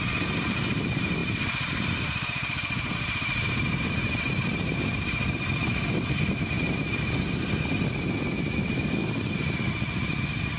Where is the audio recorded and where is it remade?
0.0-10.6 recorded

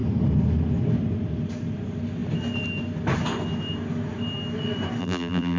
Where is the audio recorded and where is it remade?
0.0-5.0 recorded; 5.0-5.6 remade

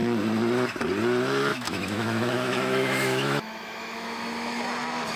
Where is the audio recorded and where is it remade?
0.0-1.5 recorded; 1.5-4.6 remade; 4.6-5.2 recorded